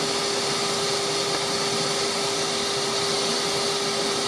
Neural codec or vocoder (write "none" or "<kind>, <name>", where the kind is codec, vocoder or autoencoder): none